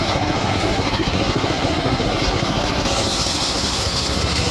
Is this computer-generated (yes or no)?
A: yes